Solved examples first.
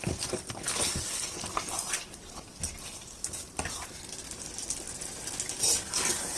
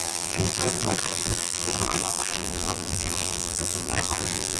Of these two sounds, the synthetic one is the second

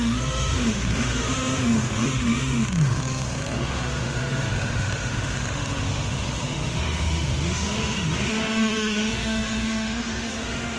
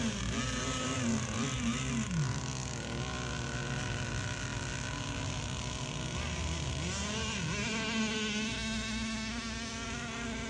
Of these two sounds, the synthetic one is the first